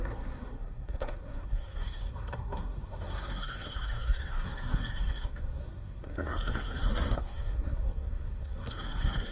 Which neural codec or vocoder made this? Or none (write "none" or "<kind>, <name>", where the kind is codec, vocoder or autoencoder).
codec, SNAC